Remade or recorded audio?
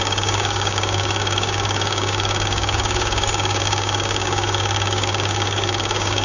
remade